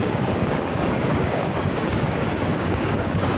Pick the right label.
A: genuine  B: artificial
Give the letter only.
B